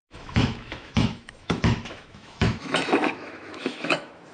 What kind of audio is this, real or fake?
fake